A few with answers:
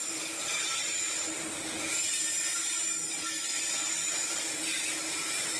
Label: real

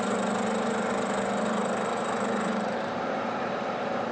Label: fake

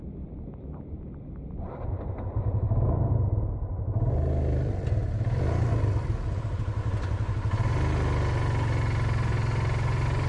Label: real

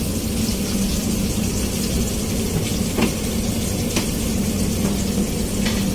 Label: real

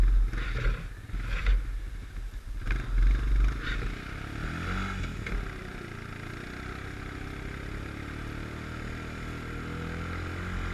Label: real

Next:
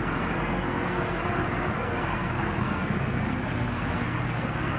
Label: fake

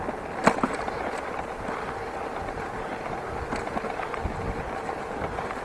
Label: real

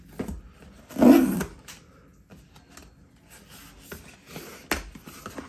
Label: real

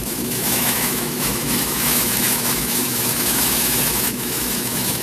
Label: fake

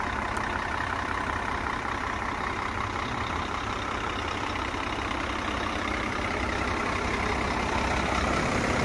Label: fake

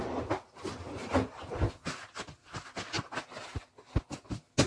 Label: real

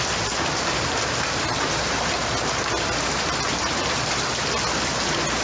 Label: real